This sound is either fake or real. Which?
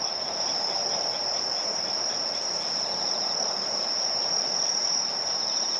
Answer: real